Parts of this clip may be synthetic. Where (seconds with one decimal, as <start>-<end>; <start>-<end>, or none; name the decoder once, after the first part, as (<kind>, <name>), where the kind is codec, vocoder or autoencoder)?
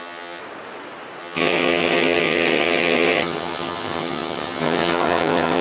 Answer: 0.0-0.4 (vocoder, HiFi-GAN); 1.2-5.6